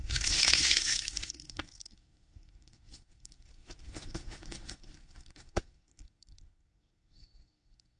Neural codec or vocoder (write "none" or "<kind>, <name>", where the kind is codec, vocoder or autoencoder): codec, SNAC